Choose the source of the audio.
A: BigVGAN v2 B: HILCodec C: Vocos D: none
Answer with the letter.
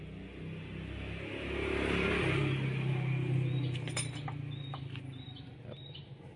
D